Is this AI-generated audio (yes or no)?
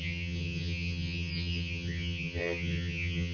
yes